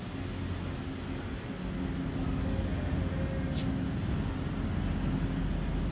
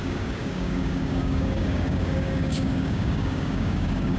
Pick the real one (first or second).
first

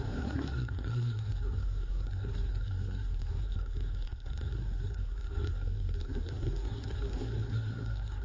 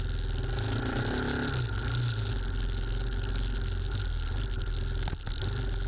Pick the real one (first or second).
second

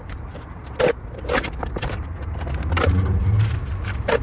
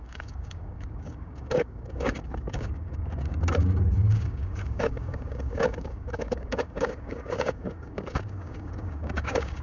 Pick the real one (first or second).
first